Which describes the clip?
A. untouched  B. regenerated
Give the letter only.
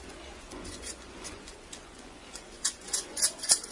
B